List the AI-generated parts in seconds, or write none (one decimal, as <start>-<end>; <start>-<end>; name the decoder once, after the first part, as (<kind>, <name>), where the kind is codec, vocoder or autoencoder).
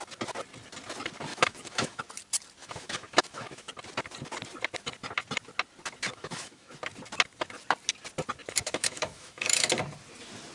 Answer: 1.3-2.0 (autoencoder, DAC-VAE); 2.6-3.7; 6.1-6.7; 8.6-9.7